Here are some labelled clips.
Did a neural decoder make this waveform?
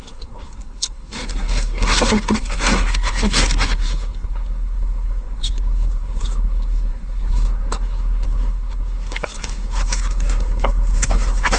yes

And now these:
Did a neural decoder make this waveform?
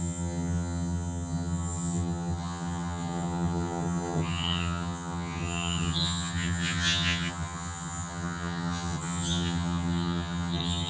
yes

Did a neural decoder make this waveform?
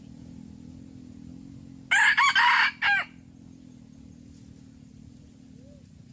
no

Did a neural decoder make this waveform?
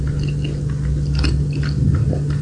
no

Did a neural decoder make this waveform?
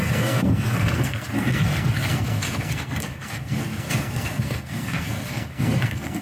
yes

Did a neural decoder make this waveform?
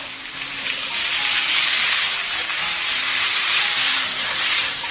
yes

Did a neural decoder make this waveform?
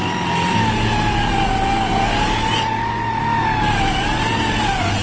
no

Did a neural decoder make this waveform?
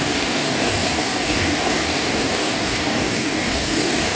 yes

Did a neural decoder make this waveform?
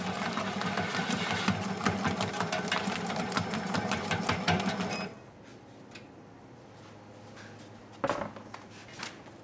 no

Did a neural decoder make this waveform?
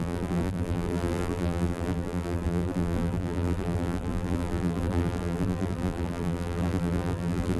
yes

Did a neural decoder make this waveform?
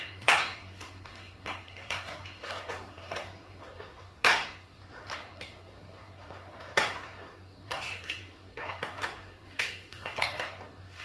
yes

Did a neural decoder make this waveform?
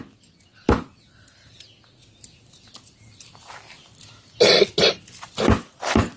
no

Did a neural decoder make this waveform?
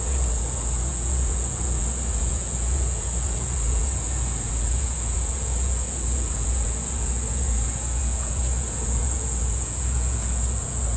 yes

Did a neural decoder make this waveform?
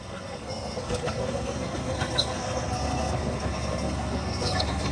yes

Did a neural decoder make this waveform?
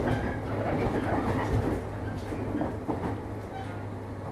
no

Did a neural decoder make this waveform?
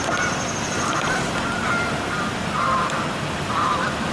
yes